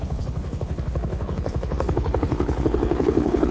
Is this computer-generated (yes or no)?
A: yes